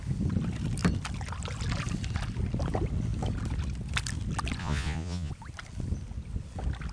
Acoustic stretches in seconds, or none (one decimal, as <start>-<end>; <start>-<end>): 0.0-4.6; 5.3-6.9